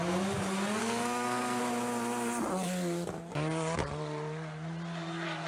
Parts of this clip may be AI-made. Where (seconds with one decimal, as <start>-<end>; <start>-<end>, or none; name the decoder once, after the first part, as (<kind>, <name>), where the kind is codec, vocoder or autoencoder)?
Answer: 0.8-1.6 (codec, SNAC)